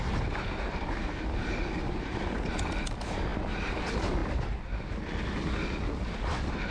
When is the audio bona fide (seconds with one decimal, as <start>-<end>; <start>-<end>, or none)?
0.0-6.7